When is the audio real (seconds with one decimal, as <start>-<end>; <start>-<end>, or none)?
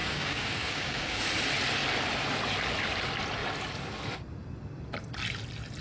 1.2-5.8